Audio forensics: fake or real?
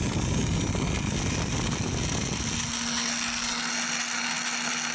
real